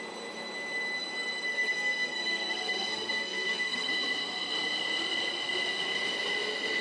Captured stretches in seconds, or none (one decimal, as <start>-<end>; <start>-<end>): 0.0-1.5; 3.9-6.8